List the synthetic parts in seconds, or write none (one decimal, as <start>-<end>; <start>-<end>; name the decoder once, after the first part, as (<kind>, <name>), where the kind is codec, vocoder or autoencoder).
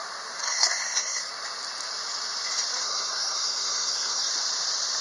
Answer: 0.4-1.3 (codec, SNAC); 2.8-4.3